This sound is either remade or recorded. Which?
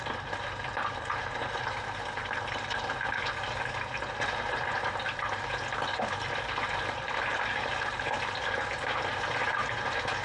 remade